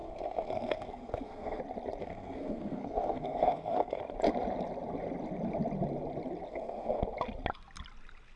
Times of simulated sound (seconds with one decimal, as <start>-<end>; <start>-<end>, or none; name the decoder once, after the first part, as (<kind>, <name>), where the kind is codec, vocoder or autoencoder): 0.0-1.6 (codec, SNAC); 2.0-4.0; 6.5-7.0